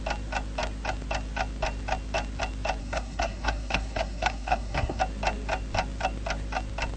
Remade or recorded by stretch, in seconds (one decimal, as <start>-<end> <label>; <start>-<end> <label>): 0.0-2.8 recorded; 2.8-5.0 remade; 5.0-7.0 recorded